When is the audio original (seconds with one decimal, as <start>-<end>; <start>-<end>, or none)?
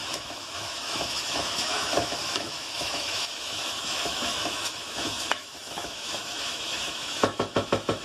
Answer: none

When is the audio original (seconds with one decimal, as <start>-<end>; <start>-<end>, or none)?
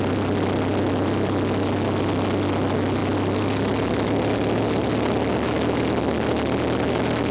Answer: 0.0-7.3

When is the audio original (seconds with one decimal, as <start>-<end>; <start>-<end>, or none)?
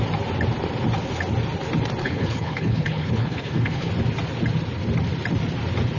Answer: 0.0-2.0; 3.9-6.0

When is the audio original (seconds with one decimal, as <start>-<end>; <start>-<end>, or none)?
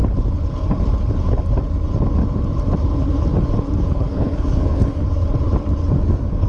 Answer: 0.0-3.9; 5.0-5.9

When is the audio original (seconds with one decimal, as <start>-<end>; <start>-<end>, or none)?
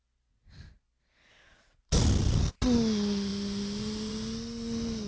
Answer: 0.0-5.1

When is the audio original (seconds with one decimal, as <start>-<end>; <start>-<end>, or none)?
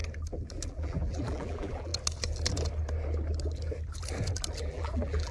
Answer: 0.0-0.7; 1.9-4.6